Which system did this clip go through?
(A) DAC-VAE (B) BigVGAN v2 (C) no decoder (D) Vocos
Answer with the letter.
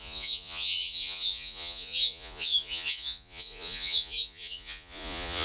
D